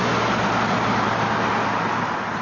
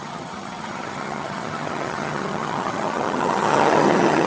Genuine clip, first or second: first